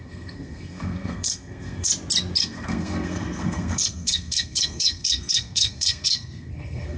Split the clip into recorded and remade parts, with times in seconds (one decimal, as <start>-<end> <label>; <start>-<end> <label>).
0.0-1.9 remade; 1.9-2.4 recorded; 2.4-7.0 remade